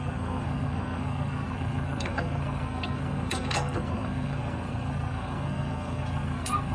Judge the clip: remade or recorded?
remade